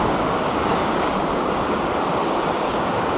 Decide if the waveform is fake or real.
fake